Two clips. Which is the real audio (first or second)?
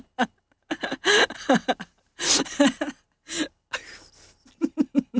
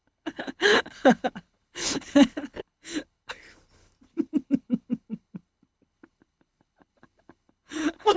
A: first